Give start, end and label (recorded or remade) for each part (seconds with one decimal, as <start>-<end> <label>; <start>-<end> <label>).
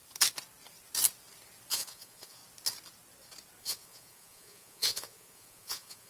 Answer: 0.0-1.7 recorded; 1.7-2.4 remade; 2.4-3.6 recorded; 3.6-6.1 remade